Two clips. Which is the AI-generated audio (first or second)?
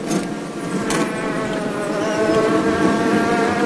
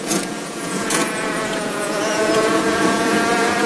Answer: second